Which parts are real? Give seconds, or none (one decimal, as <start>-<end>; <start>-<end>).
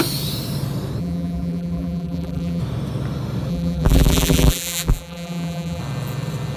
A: 0.0-1.0; 2.6-3.5; 5.8-6.6